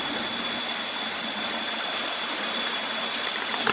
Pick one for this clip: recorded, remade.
recorded